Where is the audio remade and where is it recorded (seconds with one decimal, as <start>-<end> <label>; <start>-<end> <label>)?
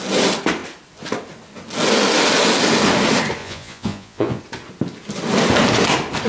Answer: 0.0-3.4 recorded; 3.4-4.4 remade; 4.4-6.3 recorded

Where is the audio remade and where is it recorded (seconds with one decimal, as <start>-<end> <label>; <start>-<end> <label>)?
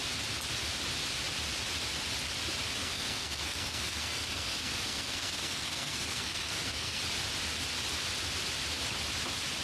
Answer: 0.0-2.8 recorded; 2.8-7.0 remade; 7.0-9.6 recorded